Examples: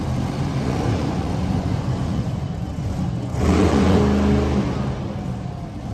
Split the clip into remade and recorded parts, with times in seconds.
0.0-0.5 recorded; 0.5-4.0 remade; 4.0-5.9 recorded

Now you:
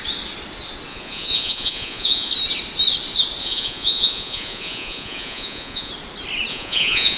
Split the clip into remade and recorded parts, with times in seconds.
0.0-0.9 recorded; 0.9-2.3 remade; 2.3-3.4 recorded; 3.4-5.9 remade; 5.9-6.5 recorded; 6.5-7.2 remade

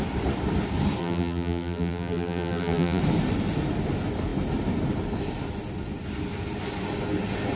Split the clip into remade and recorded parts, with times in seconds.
0.0-1.0 recorded; 1.0-3.0 remade; 3.0-7.6 recorded

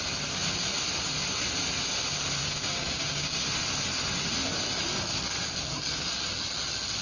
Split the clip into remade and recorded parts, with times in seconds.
0.0-2.4 recorded; 2.4-3.4 remade; 3.4-7.0 recorded

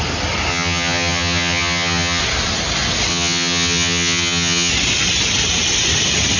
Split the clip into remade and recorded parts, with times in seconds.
0.0-0.5 recorded; 0.5-2.2 remade; 2.2-3.1 recorded; 3.1-4.7 remade; 4.7-6.4 recorded

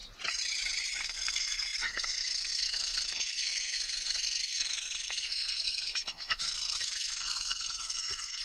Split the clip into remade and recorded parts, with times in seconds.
0.0-1.0 recorded; 1.0-8.4 remade

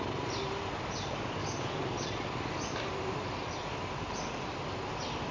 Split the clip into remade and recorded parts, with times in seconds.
0.0-5.3 recorded

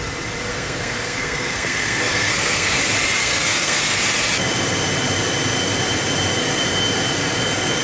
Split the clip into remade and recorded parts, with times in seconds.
0.0-0.5 recorded; 0.5-2.8 remade; 2.8-3.2 recorded; 3.2-3.8 remade; 3.8-7.8 recorded